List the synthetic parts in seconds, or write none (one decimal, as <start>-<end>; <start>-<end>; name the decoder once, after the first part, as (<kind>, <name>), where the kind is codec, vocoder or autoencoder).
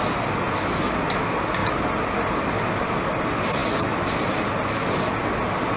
none